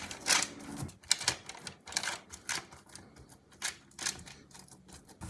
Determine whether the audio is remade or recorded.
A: recorded